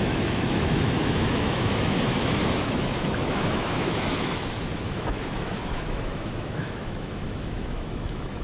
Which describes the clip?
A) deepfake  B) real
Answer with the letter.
A